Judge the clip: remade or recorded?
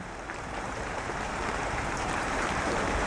remade